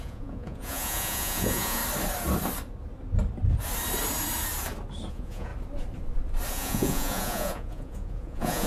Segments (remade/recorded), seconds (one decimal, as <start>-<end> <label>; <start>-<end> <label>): 0.0-1.8 remade; 1.8-5.1 recorded; 5.1-5.5 remade; 5.5-6.5 recorded; 6.5-8.7 remade